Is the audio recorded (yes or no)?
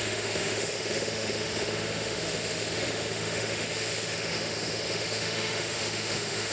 no